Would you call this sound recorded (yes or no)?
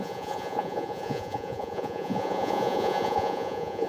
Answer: no